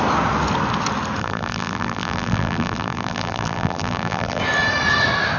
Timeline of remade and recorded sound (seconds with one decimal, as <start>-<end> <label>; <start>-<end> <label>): 0.0-1.2 recorded; 1.2-4.4 remade; 4.4-5.4 recorded